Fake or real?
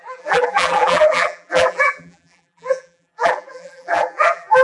fake